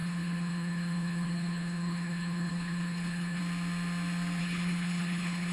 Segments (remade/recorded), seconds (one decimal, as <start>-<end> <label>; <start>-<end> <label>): 0.0-3.4 remade; 3.4-4.4 recorded; 4.4-5.5 remade